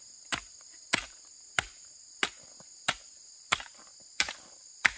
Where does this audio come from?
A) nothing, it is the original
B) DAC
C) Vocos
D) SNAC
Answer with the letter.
A